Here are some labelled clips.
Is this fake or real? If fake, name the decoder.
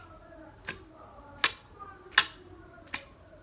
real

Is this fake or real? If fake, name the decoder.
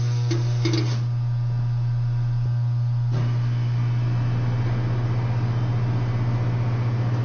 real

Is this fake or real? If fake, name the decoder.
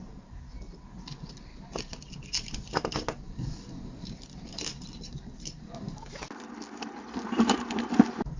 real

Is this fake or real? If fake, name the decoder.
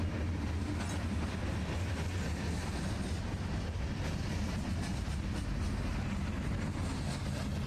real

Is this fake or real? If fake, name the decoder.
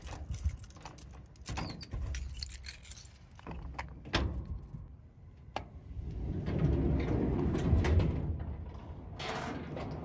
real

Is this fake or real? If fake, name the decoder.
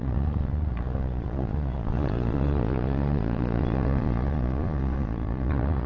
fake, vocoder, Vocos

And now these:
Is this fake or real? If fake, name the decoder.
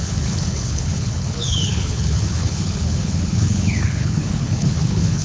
fake, codec, HILCodec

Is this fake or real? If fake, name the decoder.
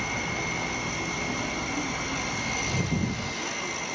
real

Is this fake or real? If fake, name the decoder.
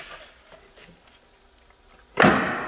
real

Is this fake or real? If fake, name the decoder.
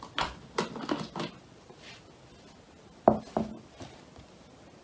real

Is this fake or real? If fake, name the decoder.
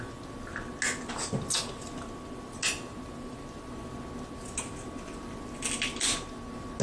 real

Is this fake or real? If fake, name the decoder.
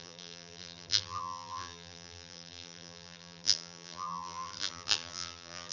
fake, vocoder, BigVGAN v2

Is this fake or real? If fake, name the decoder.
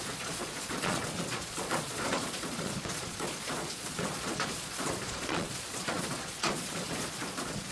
fake, vocoder, Vocos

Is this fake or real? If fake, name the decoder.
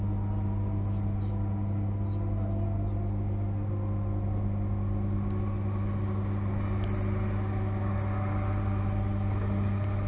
real